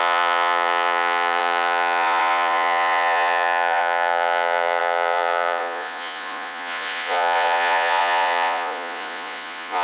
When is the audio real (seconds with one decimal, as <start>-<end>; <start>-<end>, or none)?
none